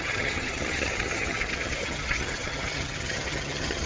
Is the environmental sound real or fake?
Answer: fake